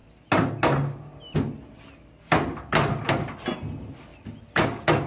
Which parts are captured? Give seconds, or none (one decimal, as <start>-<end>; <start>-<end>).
0.0-5.1